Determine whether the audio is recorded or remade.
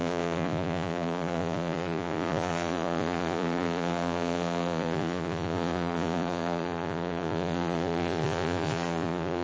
remade